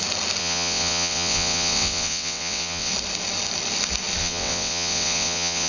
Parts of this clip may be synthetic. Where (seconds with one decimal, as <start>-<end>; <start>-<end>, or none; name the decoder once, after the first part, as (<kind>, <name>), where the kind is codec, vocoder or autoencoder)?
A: 0.4-2.9 (vocoder, WaveNeXt); 4.2-5.7